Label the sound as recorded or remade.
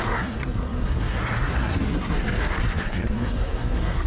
remade